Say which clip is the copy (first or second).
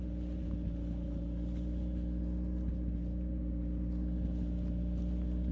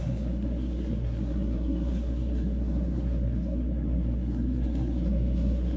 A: second